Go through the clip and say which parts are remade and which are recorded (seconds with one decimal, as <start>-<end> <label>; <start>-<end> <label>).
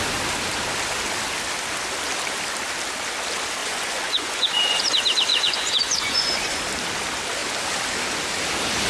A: 0.0-3.6 recorded; 3.6-4.8 remade; 4.8-5.3 recorded; 5.3-6.6 remade; 6.6-8.9 recorded